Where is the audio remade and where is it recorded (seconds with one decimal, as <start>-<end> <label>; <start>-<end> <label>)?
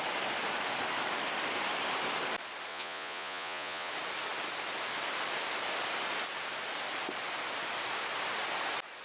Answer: 0.0-2.7 recorded; 2.7-3.9 remade; 3.9-9.0 recorded